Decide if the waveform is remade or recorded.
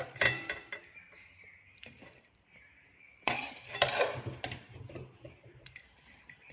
remade